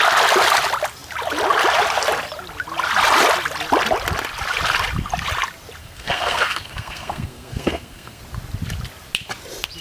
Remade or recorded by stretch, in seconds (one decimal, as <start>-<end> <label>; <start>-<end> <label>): 0.0-5.8 recorded; 5.8-8.2 remade; 8.2-9.8 recorded